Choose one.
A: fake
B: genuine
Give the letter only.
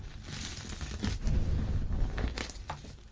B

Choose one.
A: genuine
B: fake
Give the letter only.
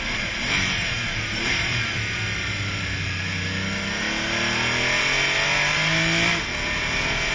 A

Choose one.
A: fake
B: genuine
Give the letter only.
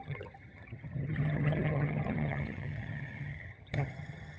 A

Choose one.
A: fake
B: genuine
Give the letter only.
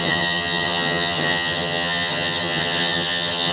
A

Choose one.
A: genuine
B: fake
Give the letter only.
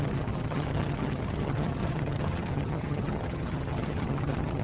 B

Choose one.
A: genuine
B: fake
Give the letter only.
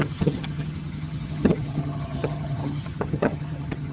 B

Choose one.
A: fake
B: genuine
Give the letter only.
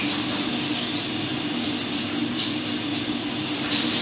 B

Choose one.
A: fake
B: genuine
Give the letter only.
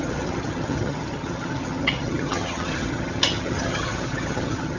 A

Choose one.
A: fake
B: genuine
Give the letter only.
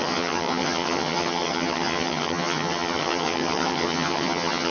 A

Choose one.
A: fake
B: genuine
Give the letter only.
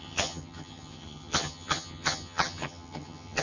A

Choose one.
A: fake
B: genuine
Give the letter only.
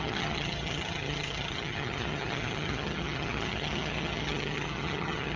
A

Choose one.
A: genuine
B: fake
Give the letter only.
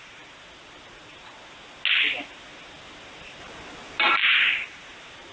A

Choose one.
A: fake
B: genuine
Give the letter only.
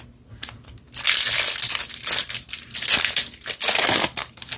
B